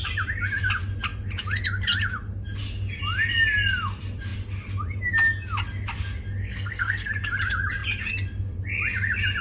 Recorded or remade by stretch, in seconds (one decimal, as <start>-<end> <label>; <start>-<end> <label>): 0.0-6.4 recorded; 6.4-7.1 remade; 7.1-9.4 recorded